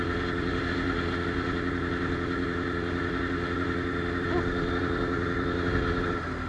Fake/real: real